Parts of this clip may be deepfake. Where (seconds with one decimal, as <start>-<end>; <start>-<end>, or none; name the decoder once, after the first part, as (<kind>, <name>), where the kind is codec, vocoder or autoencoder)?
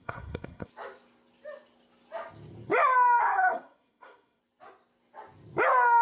0.0-0.7 (codec, SNAC); 3.2-4.4